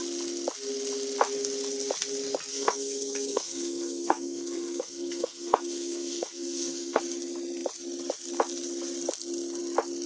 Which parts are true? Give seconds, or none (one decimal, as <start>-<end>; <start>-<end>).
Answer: 0.0-2.5; 7.0-10.1